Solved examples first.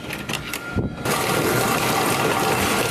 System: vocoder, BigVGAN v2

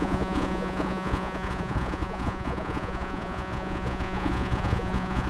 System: vocoder, Vocos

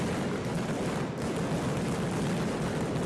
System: none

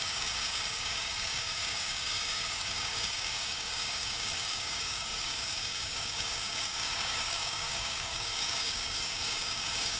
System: codec, DAC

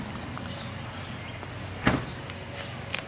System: vocoder, BigVGAN v2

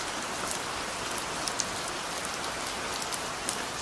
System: none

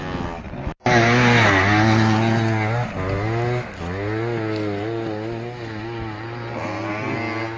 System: none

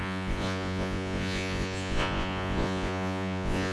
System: vocoder, Vocos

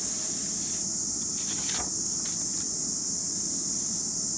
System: none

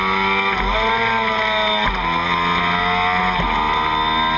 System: none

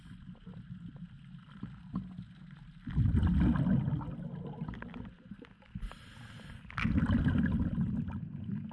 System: none